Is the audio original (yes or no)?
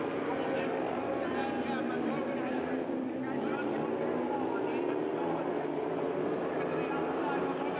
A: yes